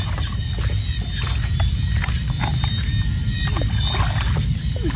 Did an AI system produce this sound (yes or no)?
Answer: no